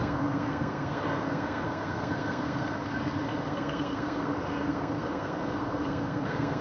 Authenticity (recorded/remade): remade